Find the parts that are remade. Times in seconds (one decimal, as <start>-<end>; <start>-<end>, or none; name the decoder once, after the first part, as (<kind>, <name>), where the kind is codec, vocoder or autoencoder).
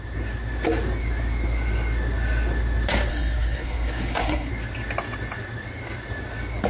3.1-4.5 (codec, SNAC)